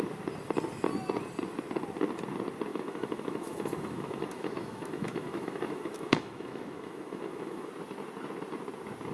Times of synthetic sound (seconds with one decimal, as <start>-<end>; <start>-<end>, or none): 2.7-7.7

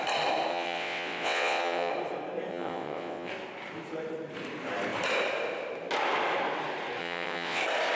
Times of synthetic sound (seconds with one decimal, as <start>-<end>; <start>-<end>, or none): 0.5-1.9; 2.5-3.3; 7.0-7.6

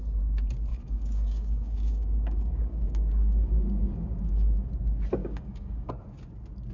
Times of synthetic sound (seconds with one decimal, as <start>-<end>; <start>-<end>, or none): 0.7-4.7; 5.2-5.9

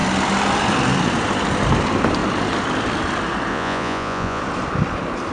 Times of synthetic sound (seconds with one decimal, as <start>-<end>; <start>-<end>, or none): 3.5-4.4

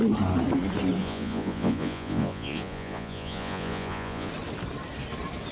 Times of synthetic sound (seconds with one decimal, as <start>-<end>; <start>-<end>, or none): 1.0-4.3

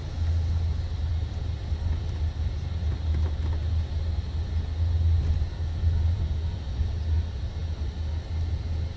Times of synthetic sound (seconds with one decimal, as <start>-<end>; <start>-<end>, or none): none

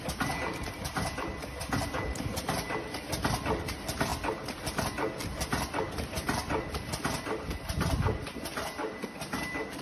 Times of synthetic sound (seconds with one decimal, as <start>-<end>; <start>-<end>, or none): none